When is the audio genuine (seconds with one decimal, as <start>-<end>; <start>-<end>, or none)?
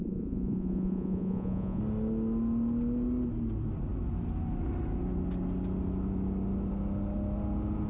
1.8-7.9